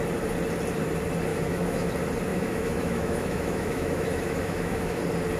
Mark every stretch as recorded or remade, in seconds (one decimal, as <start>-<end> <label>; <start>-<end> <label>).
0.0-1.3 recorded; 1.3-1.9 remade; 1.9-2.3 recorded; 2.3-5.0 remade; 5.0-5.4 recorded